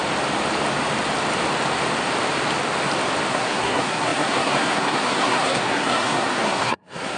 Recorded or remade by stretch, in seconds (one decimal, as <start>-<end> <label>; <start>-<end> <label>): 0.0-3.3 recorded; 3.3-7.2 remade